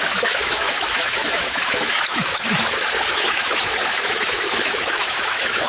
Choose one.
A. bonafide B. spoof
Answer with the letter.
B